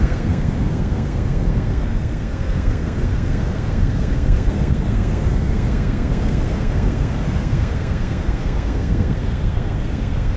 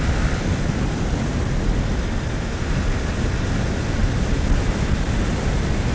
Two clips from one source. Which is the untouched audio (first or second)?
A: second